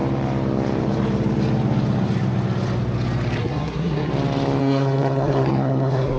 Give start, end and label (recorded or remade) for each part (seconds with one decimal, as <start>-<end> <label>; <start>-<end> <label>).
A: 0.0-3.4 recorded; 3.4-4.1 remade; 4.1-4.6 recorded; 4.6-6.2 remade